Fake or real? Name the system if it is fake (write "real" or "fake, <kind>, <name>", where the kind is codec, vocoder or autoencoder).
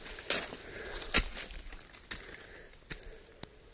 real